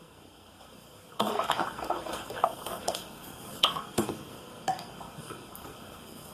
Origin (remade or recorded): remade